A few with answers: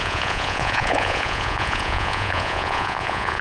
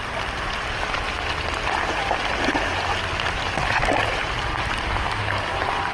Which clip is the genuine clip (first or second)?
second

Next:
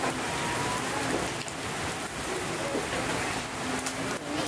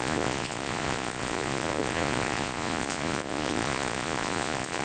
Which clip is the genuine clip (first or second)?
first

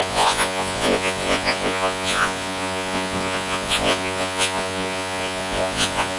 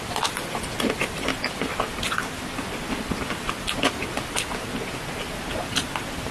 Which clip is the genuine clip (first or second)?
second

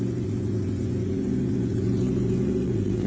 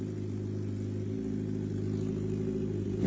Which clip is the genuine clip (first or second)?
second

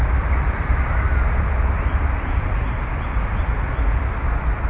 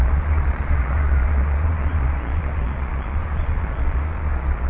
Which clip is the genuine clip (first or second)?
first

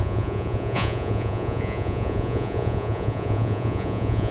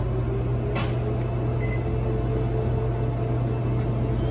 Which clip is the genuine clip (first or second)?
second